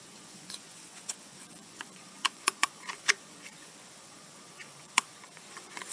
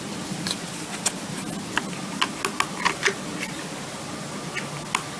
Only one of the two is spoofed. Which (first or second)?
first